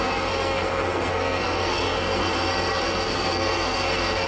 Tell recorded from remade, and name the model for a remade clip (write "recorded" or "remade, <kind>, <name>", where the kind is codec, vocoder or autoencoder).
remade, codec, SNAC